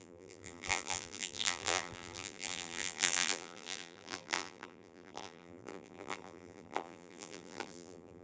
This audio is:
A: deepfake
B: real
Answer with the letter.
A